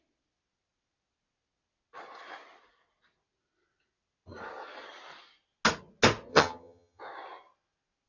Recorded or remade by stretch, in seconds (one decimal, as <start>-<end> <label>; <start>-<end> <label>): 0.0-6.3 recorded; 6.3-7.0 remade; 7.0-8.1 recorded